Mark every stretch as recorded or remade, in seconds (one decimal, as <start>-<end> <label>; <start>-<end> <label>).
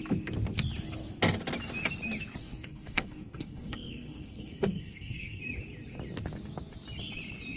0.0-2.4 recorded; 2.4-5.4 remade; 5.4-7.6 recorded